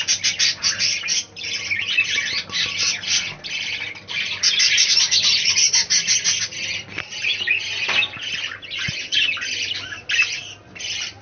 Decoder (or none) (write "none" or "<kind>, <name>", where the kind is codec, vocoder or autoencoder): none